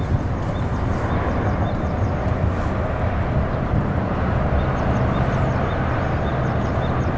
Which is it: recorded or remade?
recorded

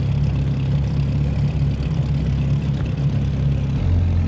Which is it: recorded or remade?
recorded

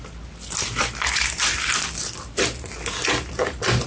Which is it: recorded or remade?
recorded